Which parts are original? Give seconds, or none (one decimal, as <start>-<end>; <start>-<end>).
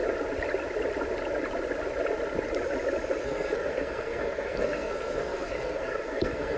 0.0-3.2